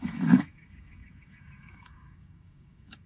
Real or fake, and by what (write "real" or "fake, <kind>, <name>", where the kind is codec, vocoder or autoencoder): fake, autoencoder, DAC-VAE